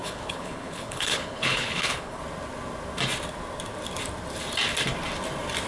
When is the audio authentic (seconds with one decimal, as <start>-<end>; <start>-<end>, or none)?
2.2-5.7